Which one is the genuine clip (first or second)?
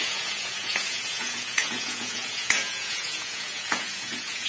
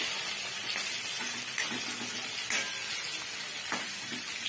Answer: second